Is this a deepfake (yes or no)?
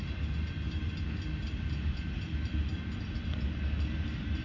yes